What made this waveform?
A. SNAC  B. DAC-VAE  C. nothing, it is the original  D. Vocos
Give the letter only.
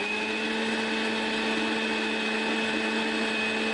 C